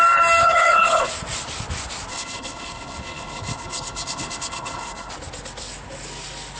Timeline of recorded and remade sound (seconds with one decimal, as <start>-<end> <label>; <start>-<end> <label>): 0.0-0.4 recorded; 0.4-1.1 remade; 1.1-2.1 recorded; 2.1-5.1 remade; 5.1-6.6 recorded